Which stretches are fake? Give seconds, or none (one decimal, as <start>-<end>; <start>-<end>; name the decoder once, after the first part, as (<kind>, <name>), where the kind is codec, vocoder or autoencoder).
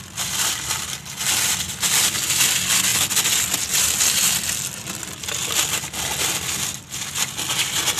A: none